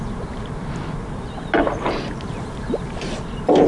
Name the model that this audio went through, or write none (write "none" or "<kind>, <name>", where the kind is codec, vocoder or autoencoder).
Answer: none